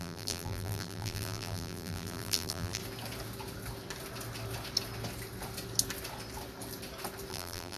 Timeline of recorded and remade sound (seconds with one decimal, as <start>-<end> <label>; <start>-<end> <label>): 0.0-2.8 remade; 2.8-7.3 recorded; 7.3-7.8 remade